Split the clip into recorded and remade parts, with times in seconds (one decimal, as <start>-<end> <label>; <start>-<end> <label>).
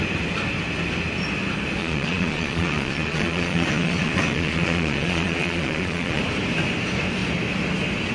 0.0-1.8 recorded; 1.8-6.2 remade; 6.2-8.1 recorded